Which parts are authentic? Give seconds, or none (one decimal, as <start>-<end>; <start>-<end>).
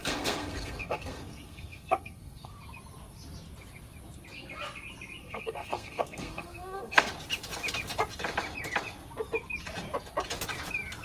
2.5-5.2; 7.1-11.0